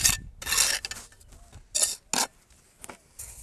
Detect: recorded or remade recorded